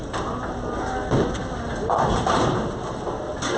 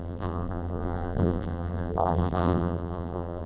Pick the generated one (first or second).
second